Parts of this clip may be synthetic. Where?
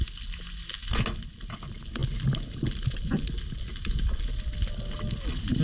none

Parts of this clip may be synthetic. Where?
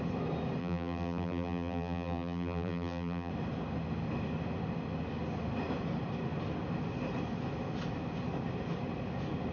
0.6-3.3 (vocoder, BigVGAN v2)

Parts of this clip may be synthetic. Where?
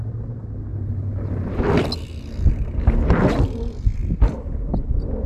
3.9-5.3 (vocoder, BigVGAN v2)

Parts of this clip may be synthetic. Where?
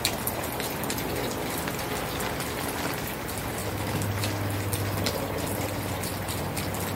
0.0-3.6 (vocoder, BigVGAN v2); 5.9-6.9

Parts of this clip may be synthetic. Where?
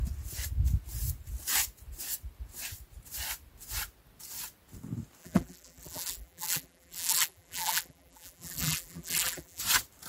5.2-9.6 (vocoder, BigVGAN v2)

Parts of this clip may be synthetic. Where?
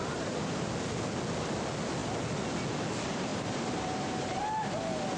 0.0-0.7 (vocoder, BigVGAN v2); 3.3-4.4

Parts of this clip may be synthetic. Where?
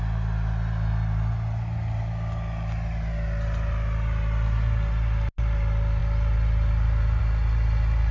none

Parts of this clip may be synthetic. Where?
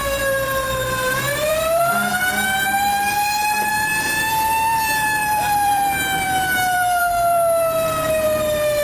0.0-8.8 (vocoder, BigVGAN v2)